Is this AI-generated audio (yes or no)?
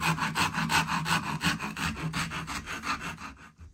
no